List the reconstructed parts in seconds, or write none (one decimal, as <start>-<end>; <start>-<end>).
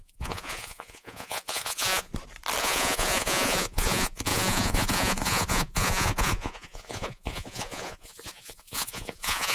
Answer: 0.0-2.1; 2.6-9.5